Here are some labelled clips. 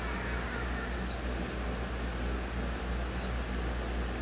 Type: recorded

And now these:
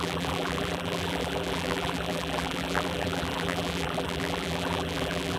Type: remade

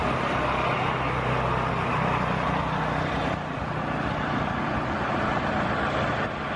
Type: recorded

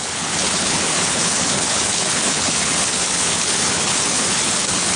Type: remade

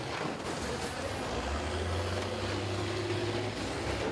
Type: recorded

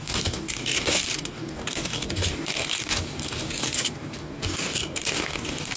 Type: remade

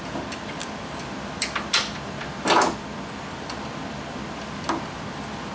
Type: recorded